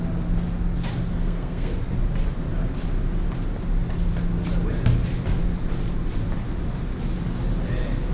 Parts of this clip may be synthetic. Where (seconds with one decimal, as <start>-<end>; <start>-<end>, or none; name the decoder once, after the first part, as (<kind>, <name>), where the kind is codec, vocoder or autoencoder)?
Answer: 1.1-1.8 (codec, SNAC)